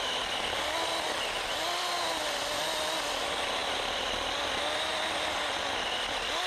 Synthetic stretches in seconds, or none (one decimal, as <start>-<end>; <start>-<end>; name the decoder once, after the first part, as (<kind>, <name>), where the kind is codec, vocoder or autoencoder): none